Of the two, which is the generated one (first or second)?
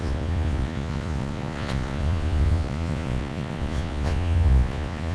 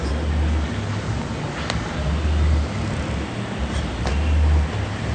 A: first